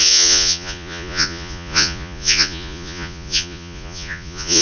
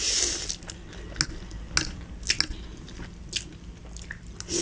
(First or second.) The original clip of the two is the second